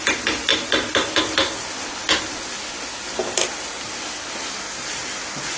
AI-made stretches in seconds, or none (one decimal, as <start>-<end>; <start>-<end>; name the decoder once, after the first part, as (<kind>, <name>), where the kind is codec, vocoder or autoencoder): none